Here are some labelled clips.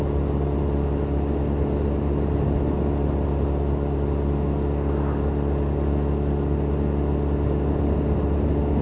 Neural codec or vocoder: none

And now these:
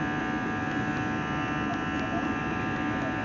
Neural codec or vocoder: none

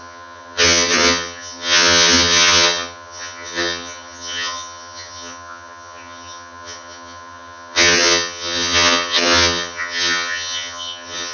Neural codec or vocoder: vocoder, HiFi-GAN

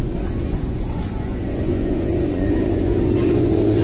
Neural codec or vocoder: vocoder, Vocos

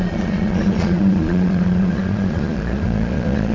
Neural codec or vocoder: vocoder, Vocos